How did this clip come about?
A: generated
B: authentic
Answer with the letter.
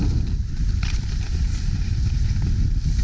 B